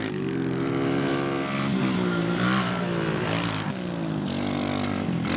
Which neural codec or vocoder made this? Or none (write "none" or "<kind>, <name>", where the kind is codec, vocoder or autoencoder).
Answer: none